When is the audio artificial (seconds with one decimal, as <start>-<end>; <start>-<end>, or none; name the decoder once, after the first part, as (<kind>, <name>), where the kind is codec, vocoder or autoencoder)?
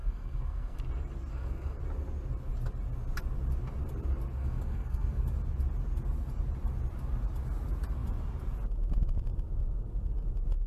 0.0-0.8 (codec, SNAC); 1.3-1.8; 4.4-5.2